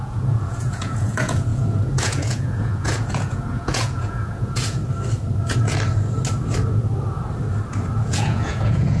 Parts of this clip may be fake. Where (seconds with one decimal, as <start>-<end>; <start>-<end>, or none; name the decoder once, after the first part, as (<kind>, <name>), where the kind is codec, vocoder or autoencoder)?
0.0-4.8 (vocoder, Vocos); 8.0-9.0